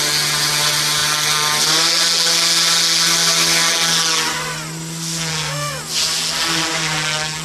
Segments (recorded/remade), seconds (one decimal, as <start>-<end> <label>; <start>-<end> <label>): 0.0-5.3 recorded; 5.3-5.8 remade; 5.8-7.4 recorded